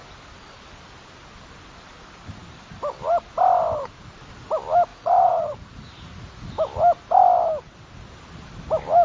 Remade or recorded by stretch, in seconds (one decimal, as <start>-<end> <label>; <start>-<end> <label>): 0.0-4.9 recorded; 4.9-6.5 remade; 6.5-9.0 recorded

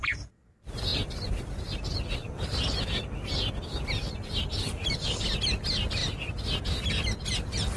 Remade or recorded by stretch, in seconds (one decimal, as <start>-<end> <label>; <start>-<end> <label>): 0.0-7.8 recorded

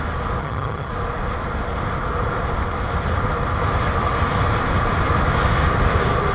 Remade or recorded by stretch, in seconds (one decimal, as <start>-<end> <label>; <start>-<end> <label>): 0.0-0.4 recorded; 0.4-0.9 remade; 0.9-6.3 recorded

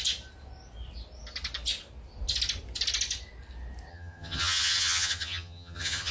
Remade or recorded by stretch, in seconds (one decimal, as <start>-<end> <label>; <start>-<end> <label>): 0.0-3.9 recorded; 3.9-6.1 remade

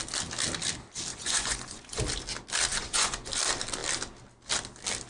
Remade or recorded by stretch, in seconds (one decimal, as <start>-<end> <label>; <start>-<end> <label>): 0.0-1.1 recorded; 1.1-2.0 remade; 2.0-2.7 recorded; 2.7-3.3 remade; 3.3-5.1 recorded

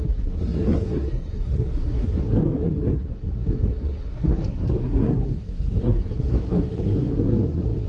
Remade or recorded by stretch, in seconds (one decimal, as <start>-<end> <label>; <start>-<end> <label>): 0.0-7.9 remade